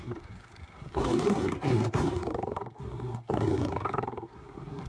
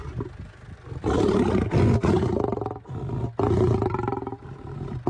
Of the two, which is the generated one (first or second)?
first